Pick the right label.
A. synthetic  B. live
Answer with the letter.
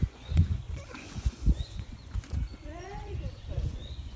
A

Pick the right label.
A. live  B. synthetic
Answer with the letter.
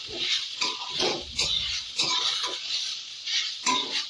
B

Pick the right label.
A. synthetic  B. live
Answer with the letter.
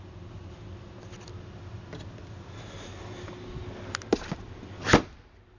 B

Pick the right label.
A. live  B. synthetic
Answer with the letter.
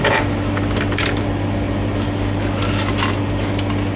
A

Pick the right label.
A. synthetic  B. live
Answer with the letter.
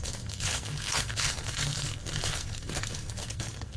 A